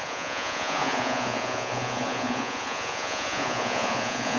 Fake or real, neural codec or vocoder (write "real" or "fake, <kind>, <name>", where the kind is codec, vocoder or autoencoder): fake, vocoder, Vocos